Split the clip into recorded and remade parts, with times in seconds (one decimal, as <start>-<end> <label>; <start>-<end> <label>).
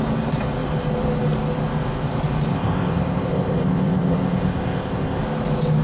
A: 0.0-2.5 recorded; 2.5-5.2 remade; 5.2-5.8 recorded